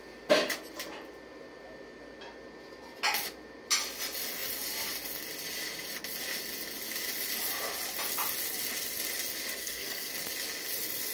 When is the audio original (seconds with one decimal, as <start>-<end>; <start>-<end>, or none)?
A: 0.0-9.6; 10.1-11.1